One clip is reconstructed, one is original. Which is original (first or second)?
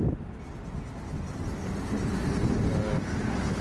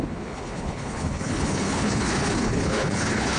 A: first